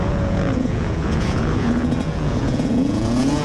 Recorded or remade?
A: remade